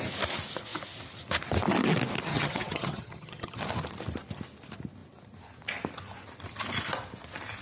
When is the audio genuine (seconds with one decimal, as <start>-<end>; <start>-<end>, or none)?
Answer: 0.0-2.3; 3.6-7.6